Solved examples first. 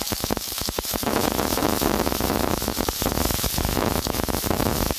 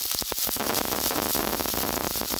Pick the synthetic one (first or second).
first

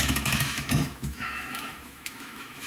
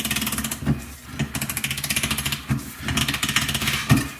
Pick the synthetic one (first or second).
first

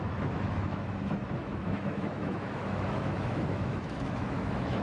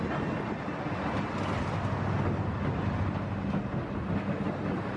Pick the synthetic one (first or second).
first